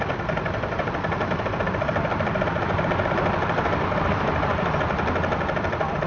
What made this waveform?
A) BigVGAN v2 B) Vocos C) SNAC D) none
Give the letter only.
A